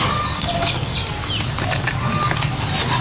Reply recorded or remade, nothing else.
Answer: recorded